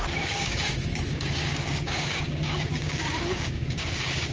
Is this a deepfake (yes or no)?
yes